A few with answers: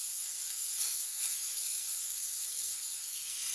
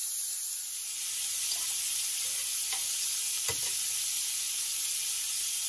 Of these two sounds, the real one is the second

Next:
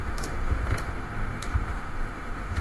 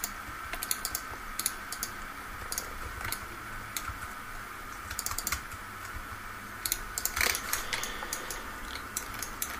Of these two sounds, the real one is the second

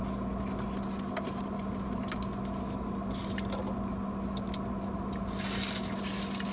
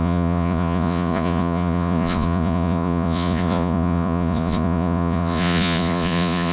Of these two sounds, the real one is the first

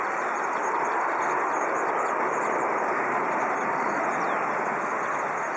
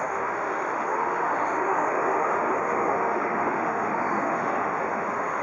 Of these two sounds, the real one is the first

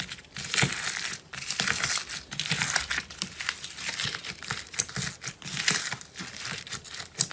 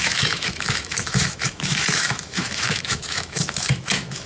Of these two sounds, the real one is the first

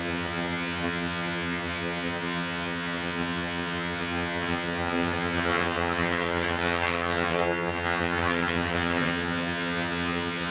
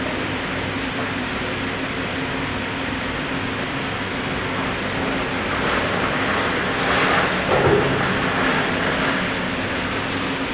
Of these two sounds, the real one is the second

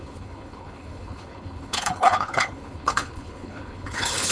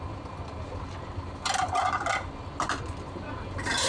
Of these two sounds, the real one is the second